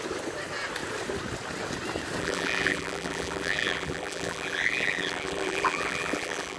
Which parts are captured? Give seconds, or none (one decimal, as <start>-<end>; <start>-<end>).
0.0-2.2